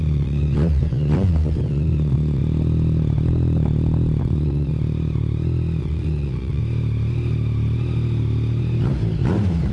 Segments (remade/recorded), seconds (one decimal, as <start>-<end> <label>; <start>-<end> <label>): 0.0-2.4 remade; 2.4-4.2 recorded; 4.2-4.7 remade; 4.7-5.8 recorded; 5.8-6.6 remade; 6.6-9.7 recorded